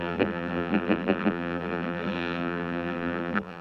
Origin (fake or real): fake